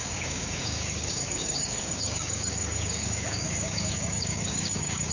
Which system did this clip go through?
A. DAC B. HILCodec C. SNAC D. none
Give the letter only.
A